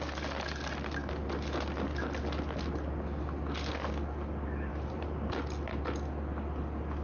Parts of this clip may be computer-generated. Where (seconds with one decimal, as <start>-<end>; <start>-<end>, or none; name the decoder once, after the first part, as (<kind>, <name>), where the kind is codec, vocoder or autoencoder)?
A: 4.7-5.3 (vocoder, BigVGAN v2)